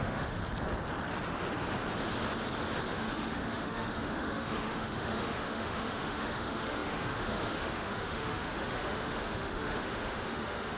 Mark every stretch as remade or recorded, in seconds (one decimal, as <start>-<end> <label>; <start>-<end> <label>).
0.0-0.4 remade; 0.4-2.9 recorded; 2.9-10.8 remade